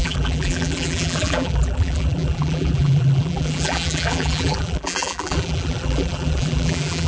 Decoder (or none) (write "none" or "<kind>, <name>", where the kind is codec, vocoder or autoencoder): vocoder, BigVGAN v2